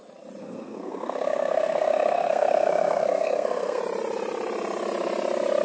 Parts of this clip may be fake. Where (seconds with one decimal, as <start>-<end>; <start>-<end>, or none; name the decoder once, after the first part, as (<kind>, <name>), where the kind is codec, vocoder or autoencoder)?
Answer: 0.4-3.8 (codec, SNAC)